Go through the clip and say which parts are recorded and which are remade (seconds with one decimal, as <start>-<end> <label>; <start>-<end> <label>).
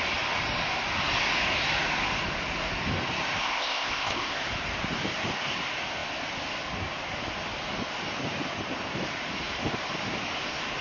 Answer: 0.0-3.4 recorded; 3.4-4.4 remade; 4.4-10.8 recorded